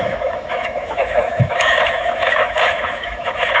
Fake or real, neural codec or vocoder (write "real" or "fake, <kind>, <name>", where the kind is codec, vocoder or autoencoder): fake, autoencoder, DAC-VAE